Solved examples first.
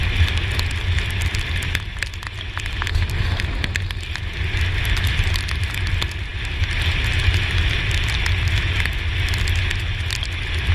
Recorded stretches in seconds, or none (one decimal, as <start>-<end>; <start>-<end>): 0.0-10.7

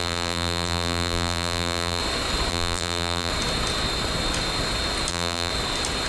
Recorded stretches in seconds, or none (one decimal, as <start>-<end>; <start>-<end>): 2.0-2.5; 3.3-5.1; 5.5-6.1

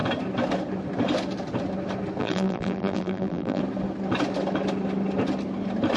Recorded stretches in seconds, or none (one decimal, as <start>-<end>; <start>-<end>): 0.0-2.2; 3.6-6.0

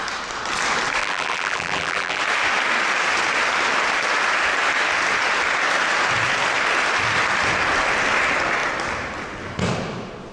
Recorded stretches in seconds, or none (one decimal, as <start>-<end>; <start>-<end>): 0.0-1.0; 2.2-10.3

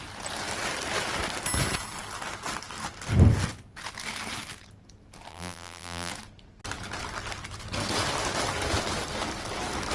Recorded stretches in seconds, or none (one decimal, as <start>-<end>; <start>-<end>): 0.0-5.3; 6.1-9.9

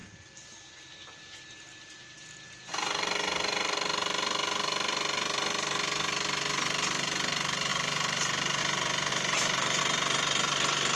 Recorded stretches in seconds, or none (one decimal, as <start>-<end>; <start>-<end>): 0.0-7.7; 8.6-9.1; 9.8-11.0

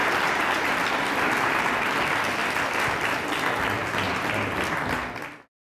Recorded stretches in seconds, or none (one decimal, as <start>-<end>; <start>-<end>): 0.7-5.7